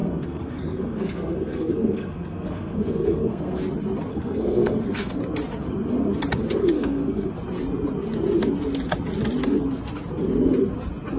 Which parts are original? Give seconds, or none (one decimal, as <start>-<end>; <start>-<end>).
3.6-4.1; 5.2-6.6; 7.3-11.2

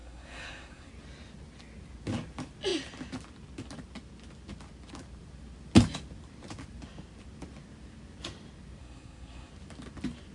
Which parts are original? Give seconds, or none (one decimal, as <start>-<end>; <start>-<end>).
0.9-8.8; 9.5-10.3

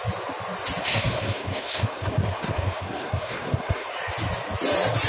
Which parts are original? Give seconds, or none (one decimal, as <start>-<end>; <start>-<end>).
0.0-0.8; 3.9-5.1

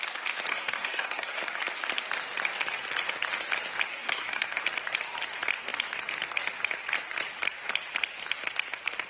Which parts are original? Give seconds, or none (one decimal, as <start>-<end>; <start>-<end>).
0.0-0.5; 1.4-3.9; 4.6-9.1